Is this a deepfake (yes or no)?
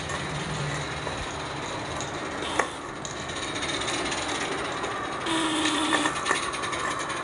no